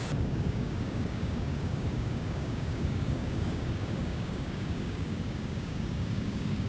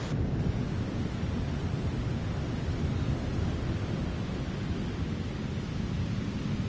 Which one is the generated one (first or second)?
first